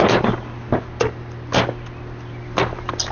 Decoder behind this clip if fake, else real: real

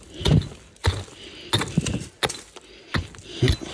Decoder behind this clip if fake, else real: real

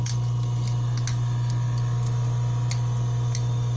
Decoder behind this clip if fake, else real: real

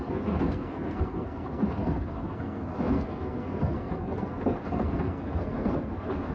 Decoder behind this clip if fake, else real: fake, codec, SNAC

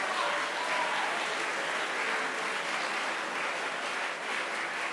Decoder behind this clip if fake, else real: real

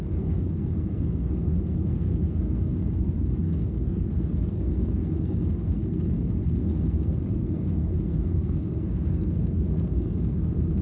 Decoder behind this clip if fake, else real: fake, codec, SNAC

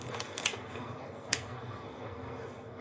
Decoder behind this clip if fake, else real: fake, codec, SNAC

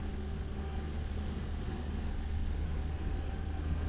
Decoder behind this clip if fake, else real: fake, codec, SNAC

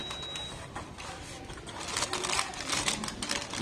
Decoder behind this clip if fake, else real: real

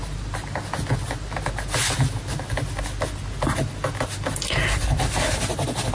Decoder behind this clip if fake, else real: real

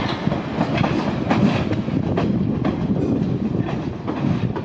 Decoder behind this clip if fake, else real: real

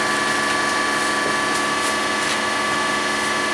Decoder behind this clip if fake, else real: real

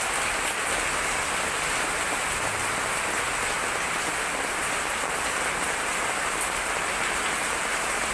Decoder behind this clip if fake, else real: real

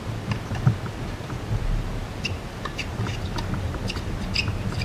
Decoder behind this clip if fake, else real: real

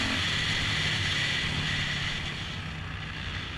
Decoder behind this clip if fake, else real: real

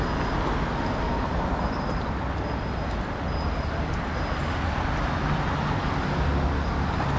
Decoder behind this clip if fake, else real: real